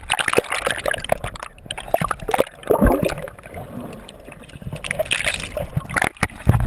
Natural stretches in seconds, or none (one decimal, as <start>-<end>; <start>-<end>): 0.0-2.6